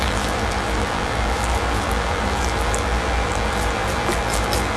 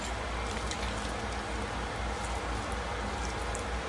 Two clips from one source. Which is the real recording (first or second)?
second